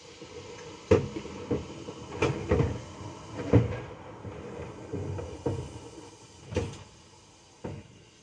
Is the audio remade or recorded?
recorded